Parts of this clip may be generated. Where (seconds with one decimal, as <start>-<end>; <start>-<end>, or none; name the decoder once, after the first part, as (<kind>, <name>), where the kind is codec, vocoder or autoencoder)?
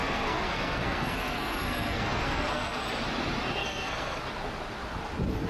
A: 0.0-2.8 (codec, SNAC); 3.6-4.2